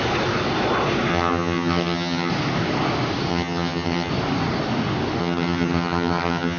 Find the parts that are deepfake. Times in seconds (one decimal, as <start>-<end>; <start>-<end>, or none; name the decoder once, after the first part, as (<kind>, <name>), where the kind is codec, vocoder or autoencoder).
1.1-2.3 (vocoder, HiFi-GAN); 3.3-4.1; 5.2-6.6